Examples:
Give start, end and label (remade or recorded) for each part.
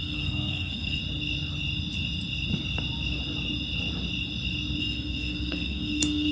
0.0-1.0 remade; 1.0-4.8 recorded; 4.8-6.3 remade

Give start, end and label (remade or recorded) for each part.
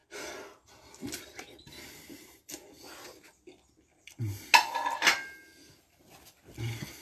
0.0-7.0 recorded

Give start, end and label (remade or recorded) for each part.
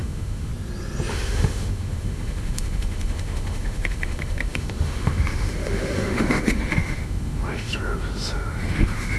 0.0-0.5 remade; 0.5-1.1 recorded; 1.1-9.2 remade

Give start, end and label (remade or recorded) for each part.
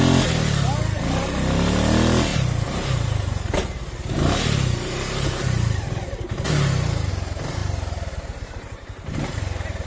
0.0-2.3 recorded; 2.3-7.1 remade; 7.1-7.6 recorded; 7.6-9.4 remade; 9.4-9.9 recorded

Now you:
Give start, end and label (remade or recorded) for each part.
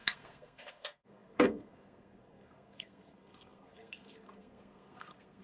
0.0-5.4 remade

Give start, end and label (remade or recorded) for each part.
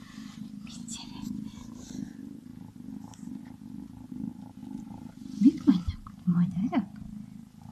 0.0-2.5 remade; 2.5-4.1 recorded; 4.1-6.6 remade; 6.6-7.1 recorded; 7.1-7.7 remade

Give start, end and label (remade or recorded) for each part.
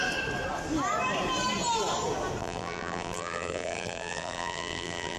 0.0-2.4 recorded; 2.4-5.2 remade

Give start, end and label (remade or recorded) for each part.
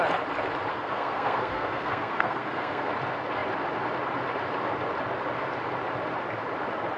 0.0-0.7 recorded; 0.7-2.9 remade; 2.9-7.0 recorded